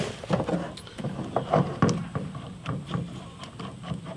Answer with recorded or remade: recorded